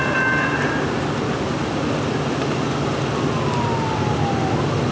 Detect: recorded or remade recorded